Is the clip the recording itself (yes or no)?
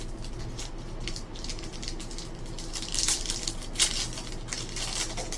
yes